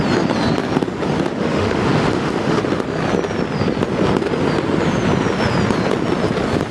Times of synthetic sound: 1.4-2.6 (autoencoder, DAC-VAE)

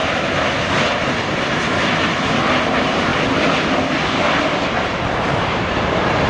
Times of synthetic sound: 0.7-3.1 (vocoder, BigVGAN v2); 4.8-6.3

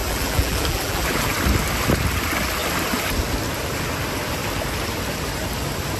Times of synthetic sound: 0.0-1.3 (vocoder, BigVGAN v2)

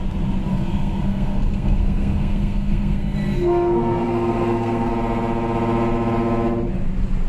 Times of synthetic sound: 0.5-4.9 (codec, SNAC)

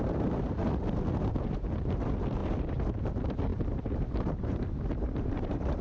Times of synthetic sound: 0.0-0.6 (vocoder, BigVGAN v2); 1.2-5.8